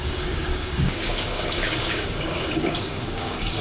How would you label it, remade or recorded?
remade